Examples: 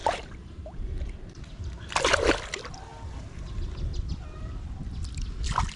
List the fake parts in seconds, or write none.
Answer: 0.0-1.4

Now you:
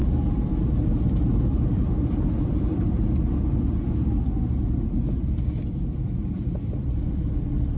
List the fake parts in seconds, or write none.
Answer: 0.0-3.2